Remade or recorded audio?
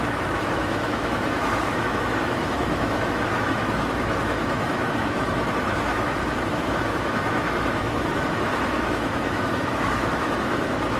remade